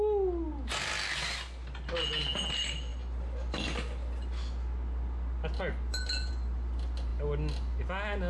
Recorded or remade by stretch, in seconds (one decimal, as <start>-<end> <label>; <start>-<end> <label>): 0.0-8.3 recorded